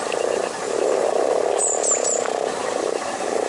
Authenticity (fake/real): real